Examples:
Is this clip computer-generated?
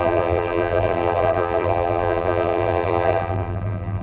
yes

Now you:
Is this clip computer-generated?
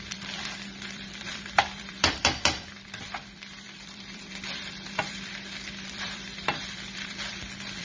yes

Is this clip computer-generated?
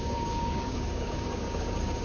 yes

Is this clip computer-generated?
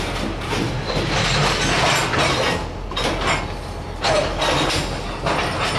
no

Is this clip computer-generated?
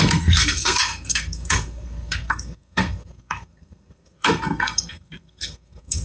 yes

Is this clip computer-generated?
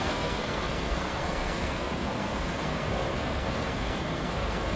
yes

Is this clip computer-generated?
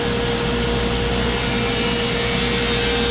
no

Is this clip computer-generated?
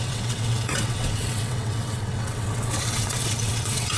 yes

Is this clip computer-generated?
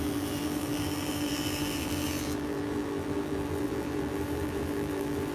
yes